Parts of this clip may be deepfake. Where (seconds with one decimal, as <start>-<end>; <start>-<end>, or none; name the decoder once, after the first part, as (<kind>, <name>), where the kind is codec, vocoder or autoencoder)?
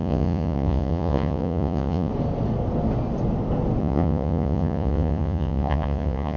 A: 0.0-2.1 (vocoder, Vocos); 3.8-6.4